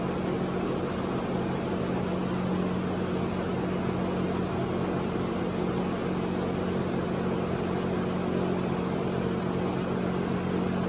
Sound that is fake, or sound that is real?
real